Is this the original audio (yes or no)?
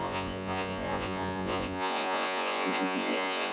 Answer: no